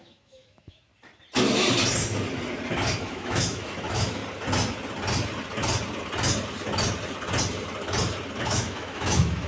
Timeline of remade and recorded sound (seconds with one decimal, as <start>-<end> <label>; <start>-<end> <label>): 0.0-0.9 remade; 0.9-3.0 recorded; 3.0-4.2 remade; 4.2-8.4 recorded; 8.4-9.5 remade